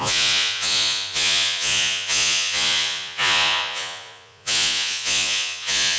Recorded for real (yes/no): no